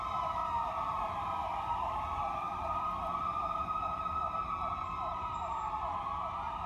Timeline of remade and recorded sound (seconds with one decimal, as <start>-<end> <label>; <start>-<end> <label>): 0.0-6.7 recorded